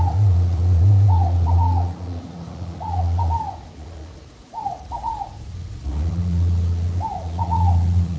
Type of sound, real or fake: fake